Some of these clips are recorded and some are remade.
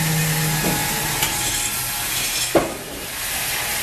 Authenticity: recorded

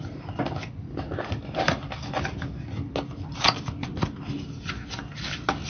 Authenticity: recorded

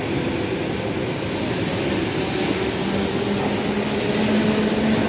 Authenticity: recorded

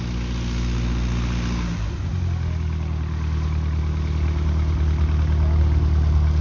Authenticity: recorded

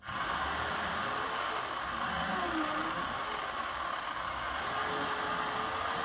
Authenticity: recorded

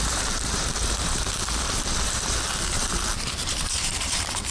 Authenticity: remade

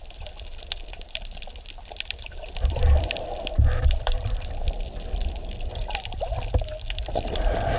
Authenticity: remade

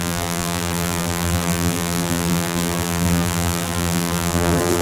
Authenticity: remade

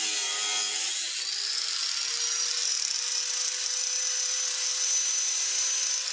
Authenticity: recorded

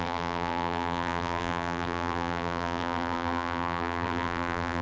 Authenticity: remade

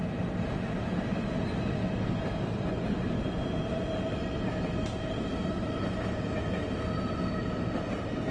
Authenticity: recorded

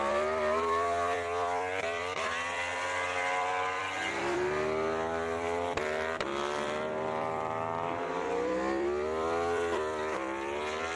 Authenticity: remade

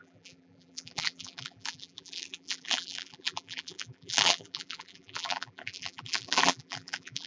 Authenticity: remade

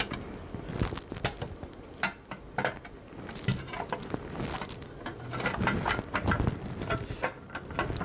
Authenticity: recorded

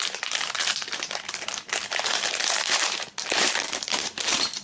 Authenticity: remade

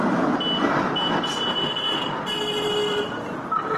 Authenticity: recorded